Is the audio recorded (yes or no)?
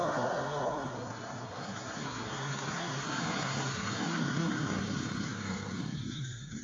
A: no